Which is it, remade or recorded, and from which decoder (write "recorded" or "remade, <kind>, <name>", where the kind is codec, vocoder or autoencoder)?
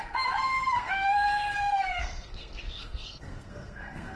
remade, codec, SNAC